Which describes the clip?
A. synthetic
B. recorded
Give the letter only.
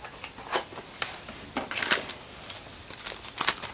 B